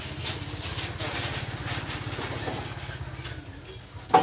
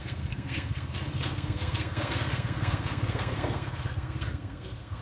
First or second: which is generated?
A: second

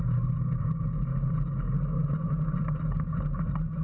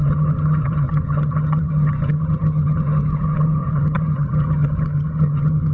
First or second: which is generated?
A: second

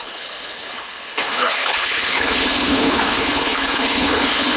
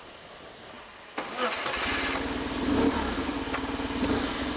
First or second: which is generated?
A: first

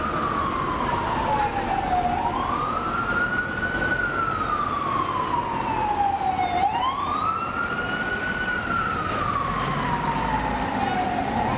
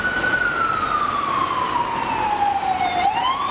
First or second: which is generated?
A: second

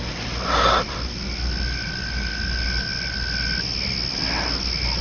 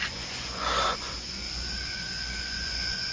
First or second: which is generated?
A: second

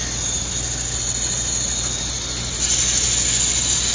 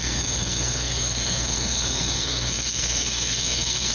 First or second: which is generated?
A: second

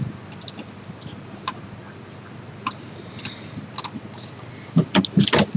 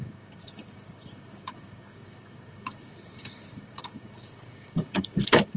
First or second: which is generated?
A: second